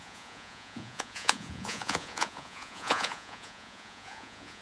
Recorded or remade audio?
remade